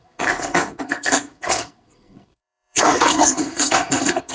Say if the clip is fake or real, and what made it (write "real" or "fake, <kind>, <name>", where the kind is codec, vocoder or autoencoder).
fake, codec, SNAC